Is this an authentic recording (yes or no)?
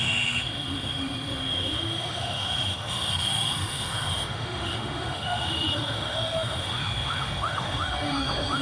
no